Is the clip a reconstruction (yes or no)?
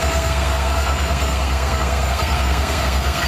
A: yes